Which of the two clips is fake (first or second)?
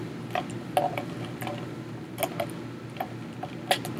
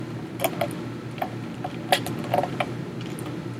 second